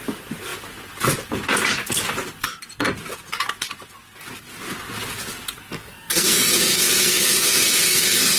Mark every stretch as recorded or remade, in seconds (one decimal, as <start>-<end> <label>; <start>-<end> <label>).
0.0-5.7 recorded; 5.7-8.4 remade